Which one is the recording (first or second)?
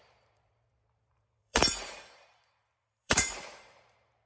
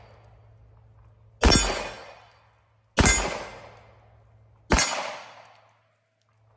second